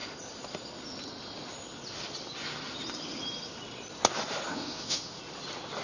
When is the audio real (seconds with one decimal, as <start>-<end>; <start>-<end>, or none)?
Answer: 0.0-4.5; 5.2-5.8

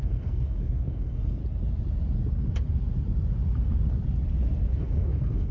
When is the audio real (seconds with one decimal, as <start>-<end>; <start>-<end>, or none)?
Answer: 1.4-4.7